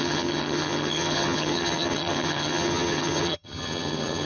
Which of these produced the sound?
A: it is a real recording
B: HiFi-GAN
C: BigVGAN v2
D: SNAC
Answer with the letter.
B